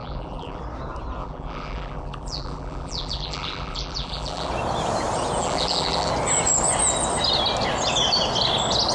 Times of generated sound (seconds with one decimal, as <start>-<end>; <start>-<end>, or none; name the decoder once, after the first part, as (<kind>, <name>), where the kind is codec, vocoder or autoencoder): 0.0-0.6 (vocoder, BigVGAN v2); 1.2-4.5; 5.4-6.1